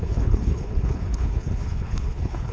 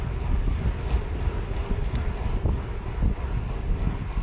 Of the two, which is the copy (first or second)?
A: first